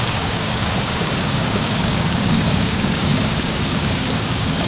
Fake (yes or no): yes